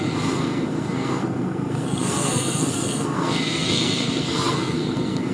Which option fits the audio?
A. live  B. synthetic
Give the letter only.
B